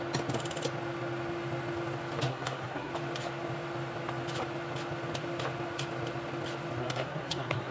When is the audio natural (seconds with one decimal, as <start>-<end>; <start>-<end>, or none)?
0.0-2.3; 2.9-6.8